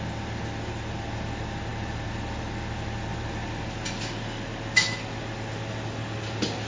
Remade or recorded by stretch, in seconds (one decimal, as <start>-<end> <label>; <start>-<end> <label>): 0.0-6.7 recorded